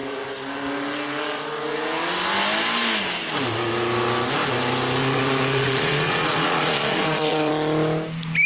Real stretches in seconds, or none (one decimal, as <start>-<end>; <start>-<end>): 0.0-5.0; 7.5-8.5